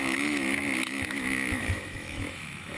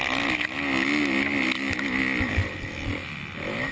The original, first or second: second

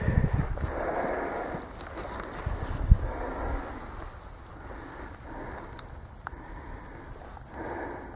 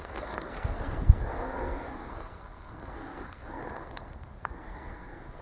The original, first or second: first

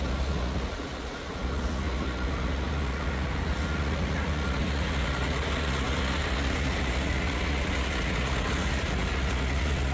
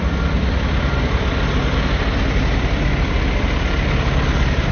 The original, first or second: second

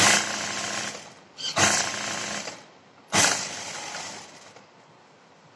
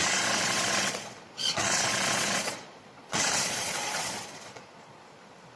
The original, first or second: first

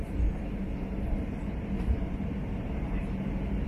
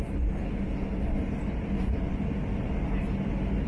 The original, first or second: second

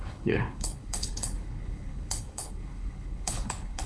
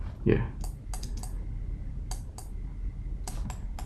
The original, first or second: second